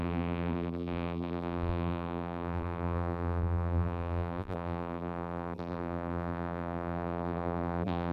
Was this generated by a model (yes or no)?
yes